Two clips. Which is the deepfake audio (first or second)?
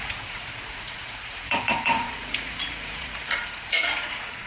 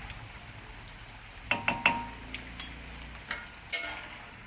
first